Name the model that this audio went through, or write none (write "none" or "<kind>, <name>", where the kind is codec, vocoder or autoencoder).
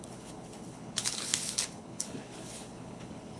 codec, HILCodec